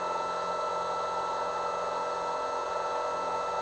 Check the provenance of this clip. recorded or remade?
recorded